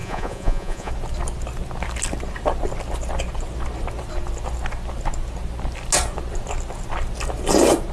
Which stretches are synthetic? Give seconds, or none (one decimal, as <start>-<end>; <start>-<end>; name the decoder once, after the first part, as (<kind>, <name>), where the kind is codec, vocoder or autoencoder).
0.0-0.9 (vocoder, Vocos)